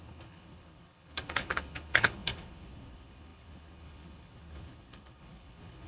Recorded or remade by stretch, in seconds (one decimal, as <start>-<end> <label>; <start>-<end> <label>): 0.0-5.9 remade